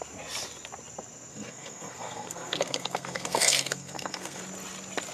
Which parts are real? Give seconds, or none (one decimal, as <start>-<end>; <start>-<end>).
0.0-1.3; 4.4-5.1